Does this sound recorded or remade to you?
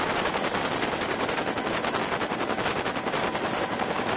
recorded